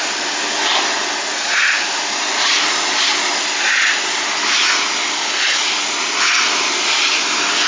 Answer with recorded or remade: recorded